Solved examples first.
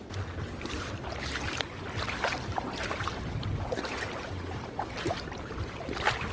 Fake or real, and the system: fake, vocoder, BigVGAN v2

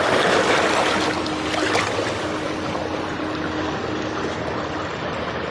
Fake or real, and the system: real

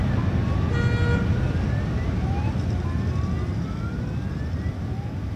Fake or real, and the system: real